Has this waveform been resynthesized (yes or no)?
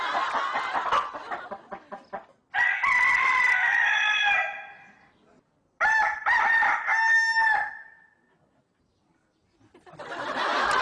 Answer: no